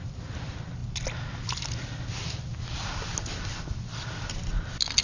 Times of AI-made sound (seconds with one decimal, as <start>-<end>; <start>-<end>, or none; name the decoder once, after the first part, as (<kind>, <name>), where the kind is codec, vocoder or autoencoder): none